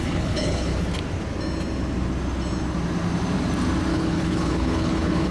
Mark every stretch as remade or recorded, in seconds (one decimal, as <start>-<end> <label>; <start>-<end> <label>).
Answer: 0.0-0.7 remade; 0.7-3.9 recorded; 3.9-5.3 remade